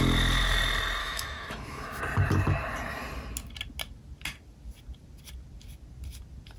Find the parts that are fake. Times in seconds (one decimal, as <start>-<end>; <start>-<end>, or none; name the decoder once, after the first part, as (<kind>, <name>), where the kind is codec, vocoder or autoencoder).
1.0-2.0 (autoencoder, DAC-VAE)